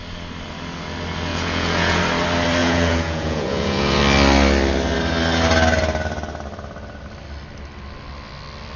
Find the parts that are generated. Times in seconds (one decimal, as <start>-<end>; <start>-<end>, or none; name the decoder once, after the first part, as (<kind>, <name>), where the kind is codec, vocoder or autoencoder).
1.3-2.0 (vocoder, Vocos); 2.6-4.0